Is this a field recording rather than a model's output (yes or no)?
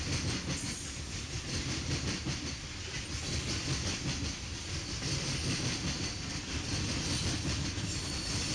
yes